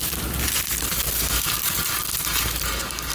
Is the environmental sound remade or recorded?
recorded